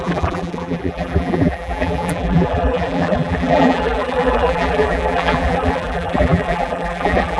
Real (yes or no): no